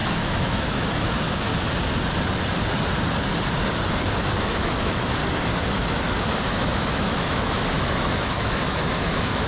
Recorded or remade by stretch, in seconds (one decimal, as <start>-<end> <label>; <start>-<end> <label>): 0.0-1.5 remade; 1.5-4.4 recorded; 4.4-5.2 remade; 5.2-6.5 recorded; 6.5-9.5 remade